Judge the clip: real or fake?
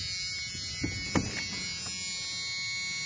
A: real